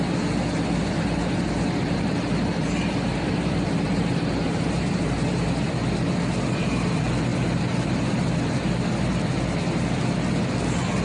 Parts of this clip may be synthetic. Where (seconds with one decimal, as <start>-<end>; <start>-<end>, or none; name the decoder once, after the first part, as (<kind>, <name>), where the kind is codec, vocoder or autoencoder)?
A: 3.1-5.0 (vocoder, BigVGAN v2)